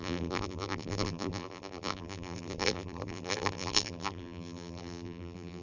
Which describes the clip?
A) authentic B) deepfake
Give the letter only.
B